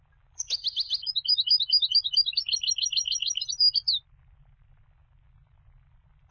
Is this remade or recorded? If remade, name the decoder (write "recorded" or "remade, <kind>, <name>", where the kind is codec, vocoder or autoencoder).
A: recorded